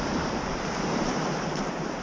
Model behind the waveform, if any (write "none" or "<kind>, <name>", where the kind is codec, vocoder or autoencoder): vocoder, BigVGAN v2